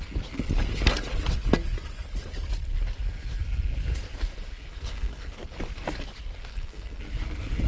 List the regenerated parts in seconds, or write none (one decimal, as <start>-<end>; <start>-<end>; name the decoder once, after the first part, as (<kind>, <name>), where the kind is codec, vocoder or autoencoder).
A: 4.7-5.3 (codec, SNAC); 6.5-7.0